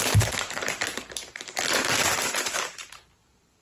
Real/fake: fake